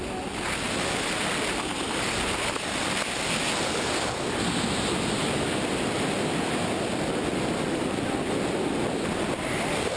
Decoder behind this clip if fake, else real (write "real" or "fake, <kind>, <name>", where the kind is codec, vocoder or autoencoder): real